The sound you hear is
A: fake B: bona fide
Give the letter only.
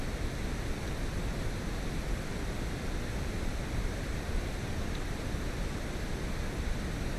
A